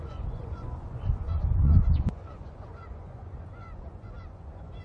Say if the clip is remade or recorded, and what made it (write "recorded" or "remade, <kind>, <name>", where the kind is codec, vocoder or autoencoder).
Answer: remade, vocoder, Vocos